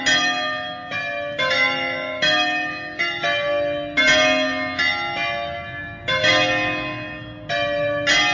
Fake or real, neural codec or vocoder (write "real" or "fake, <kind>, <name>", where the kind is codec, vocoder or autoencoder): real